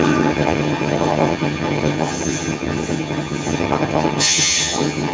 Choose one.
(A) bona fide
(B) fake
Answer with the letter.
B